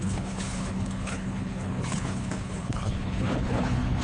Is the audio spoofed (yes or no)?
yes